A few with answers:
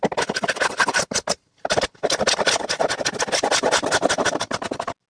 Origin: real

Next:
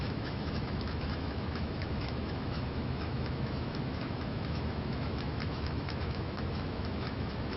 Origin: fake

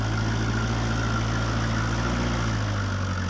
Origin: real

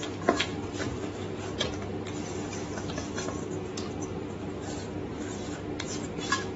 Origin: real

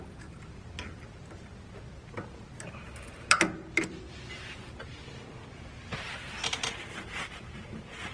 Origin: real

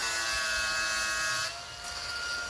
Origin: real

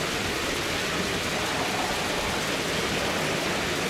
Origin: real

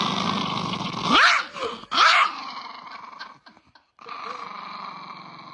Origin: real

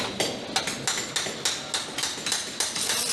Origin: real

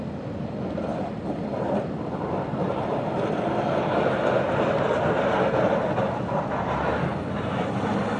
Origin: real